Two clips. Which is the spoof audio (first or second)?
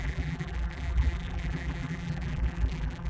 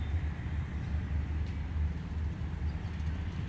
first